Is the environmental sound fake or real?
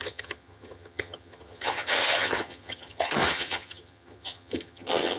fake